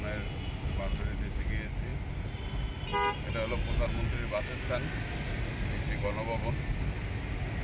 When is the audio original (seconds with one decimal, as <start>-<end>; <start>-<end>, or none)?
0.0-7.6

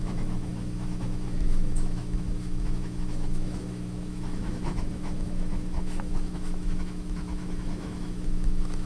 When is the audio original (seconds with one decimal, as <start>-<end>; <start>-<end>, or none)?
none

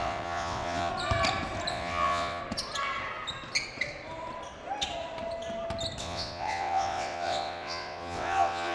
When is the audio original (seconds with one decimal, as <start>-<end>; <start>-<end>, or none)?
0.9-1.7; 2.4-6.0

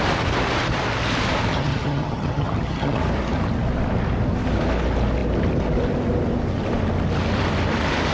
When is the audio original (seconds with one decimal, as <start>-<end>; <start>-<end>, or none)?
0.0-1.5; 3.0-8.1